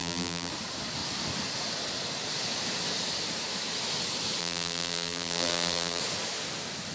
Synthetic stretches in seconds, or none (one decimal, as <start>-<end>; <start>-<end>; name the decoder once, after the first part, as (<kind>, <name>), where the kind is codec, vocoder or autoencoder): 0.0-0.5 (vocoder, BigVGAN v2); 4.4-6.0